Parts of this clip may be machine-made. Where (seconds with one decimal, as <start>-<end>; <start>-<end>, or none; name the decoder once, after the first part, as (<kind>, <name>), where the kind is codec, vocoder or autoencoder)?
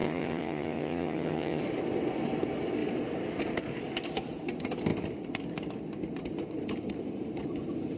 0.0-1.6 (vocoder, HiFi-GAN)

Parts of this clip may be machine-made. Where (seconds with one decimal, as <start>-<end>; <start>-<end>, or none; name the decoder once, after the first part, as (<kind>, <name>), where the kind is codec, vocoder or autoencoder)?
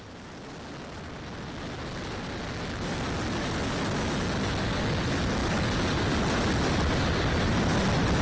none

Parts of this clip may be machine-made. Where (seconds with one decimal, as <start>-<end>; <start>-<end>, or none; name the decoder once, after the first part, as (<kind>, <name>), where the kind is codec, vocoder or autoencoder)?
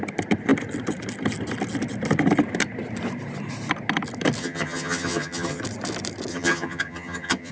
4.4-5.6 (vocoder, HiFi-GAN); 6.3-7.5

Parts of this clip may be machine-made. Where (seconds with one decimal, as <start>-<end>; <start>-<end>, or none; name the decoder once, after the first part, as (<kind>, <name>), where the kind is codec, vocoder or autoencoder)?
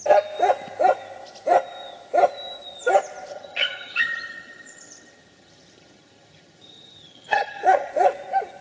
3.3-7.9 (vocoder, HiFi-GAN)